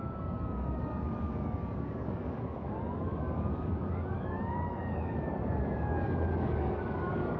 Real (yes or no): no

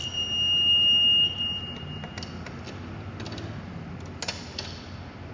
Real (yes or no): yes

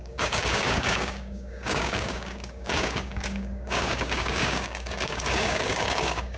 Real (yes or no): no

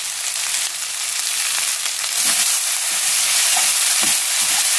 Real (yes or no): yes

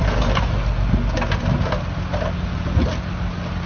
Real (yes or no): yes